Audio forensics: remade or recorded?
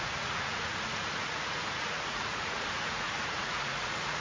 remade